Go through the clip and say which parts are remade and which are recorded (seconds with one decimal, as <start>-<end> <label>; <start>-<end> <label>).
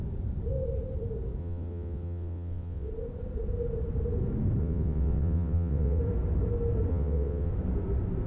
0.0-1.4 recorded; 1.4-2.9 remade; 2.9-4.6 recorded; 4.6-6.0 remade; 6.0-6.9 recorded; 6.9-7.5 remade; 7.5-8.3 recorded